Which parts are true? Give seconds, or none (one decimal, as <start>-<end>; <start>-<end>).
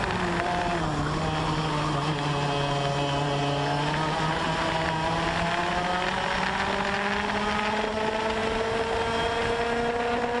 0.0-10.4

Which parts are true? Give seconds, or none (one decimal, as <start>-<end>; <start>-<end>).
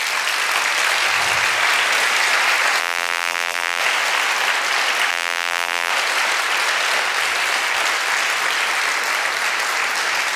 0.0-2.8; 3.8-5.1; 5.9-10.4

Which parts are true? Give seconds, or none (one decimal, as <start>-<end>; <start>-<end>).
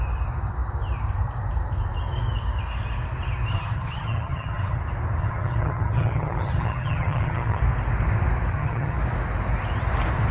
0.0-3.5; 4.8-5.2; 7.6-8.5; 9.0-10.3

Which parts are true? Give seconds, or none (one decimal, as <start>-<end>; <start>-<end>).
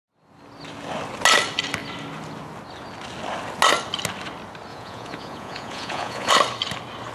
0.0-4.7; 6.3-7.1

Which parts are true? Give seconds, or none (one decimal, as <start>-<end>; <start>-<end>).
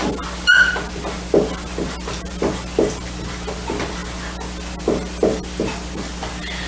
0.0-6.7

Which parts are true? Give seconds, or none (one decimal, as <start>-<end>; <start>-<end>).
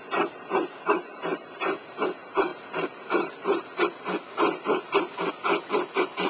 0.0-6.3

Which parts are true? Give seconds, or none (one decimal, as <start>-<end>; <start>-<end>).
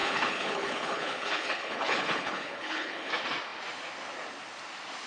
3.1-5.1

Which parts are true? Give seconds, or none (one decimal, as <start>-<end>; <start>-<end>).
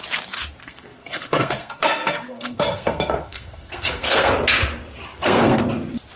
0.0-0.6; 4.3-5.1; 5.6-6.2